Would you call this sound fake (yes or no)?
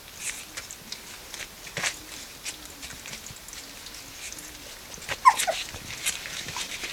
no